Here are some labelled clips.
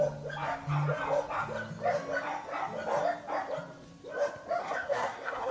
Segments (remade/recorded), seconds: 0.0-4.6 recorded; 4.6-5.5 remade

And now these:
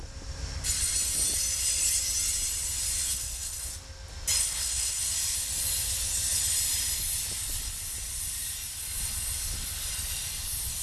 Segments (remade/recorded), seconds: 0.0-3.1 recorded; 3.1-3.7 remade; 3.7-4.4 recorded; 4.4-5.0 remade; 5.0-10.8 recorded

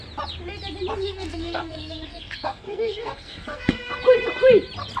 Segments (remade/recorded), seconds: 0.0-1.0 recorded; 1.0-3.9 remade; 3.9-5.0 recorded

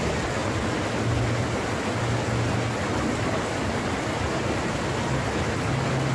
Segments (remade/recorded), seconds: 0.0-6.1 recorded

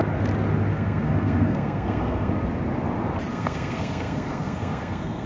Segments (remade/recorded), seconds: 0.0-0.7 recorded; 0.7-2.3 remade; 2.3-3.3 recorded; 3.3-5.3 remade

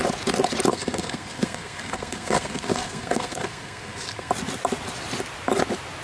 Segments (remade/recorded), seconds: 0.0-0.7 recorded; 0.7-4.3 remade; 4.3-6.0 recorded